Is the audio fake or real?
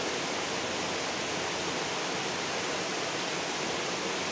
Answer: real